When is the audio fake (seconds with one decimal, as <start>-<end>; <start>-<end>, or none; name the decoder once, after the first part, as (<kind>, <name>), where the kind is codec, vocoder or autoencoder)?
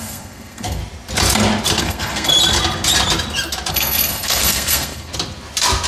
0.0-0.8 (codec, SNAC); 1.8-2.3; 3.7-5.1